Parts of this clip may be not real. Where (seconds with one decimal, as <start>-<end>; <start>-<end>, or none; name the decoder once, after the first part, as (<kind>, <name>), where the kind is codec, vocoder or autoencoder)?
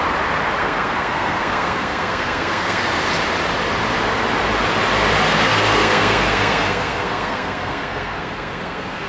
0.6-2.8 (codec, SNAC); 5.3-9.1